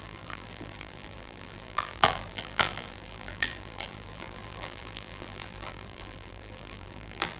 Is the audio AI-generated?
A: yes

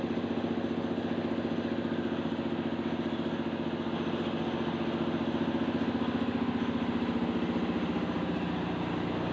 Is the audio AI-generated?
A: no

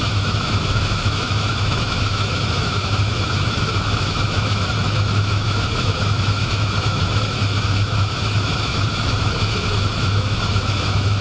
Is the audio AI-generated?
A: yes